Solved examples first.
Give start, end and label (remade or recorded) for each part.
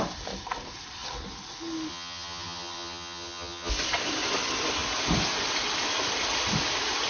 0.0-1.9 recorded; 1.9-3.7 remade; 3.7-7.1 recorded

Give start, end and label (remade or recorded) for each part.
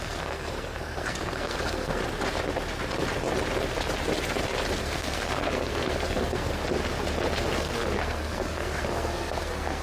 0.0-2.0 remade; 2.0-4.8 recorded; 4.8-6.6 remade; 6.6-7.3 recorded; 7.3-9.8 remade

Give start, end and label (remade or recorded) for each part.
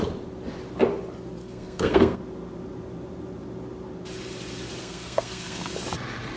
0.0-1.4 recorded; 1.4-2.2 remade; 2.2-4.8 recorded; 4.8-5.7 remade; 5.7-6.4 recorded